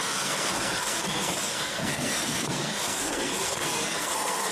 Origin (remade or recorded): remade